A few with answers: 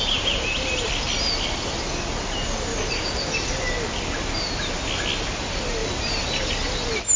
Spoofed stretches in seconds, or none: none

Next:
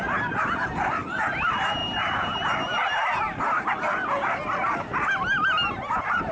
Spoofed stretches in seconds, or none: none

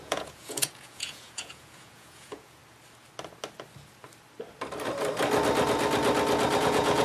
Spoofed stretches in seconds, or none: 0.0-2.6 (vocoder, Vocos); 6.6-7.0

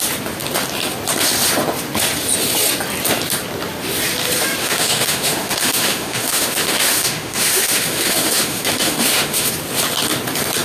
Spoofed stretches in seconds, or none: 4.6-9.5 (autoencoder, DAC-VAE)

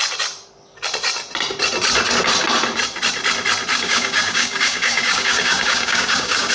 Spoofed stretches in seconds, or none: 3.7-6.5 (codec, DAC)

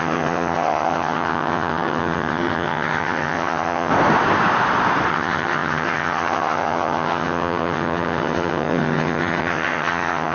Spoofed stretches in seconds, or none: 0.0-3.9 (vocoder, HiFi-GAN); 5.1-10.3

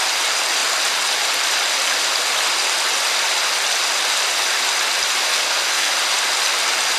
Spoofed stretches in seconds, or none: 5.3-5.9 (codec, SNAC)

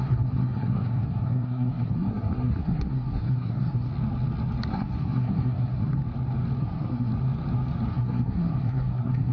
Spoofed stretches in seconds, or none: 0.0-3.9 (codec, SNAC); 4.7-6.0; 6.6-7.1; 7.9-9.3